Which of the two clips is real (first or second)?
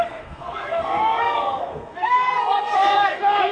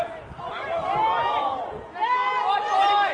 second